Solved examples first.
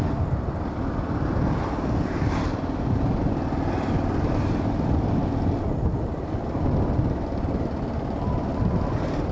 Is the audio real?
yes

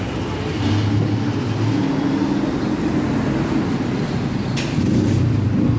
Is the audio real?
yes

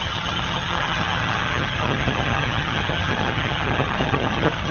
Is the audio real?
no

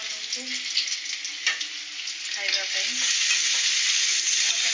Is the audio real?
yes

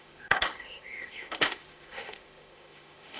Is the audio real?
no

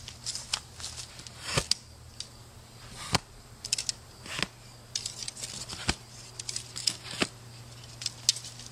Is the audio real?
yes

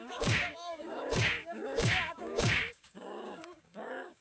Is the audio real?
no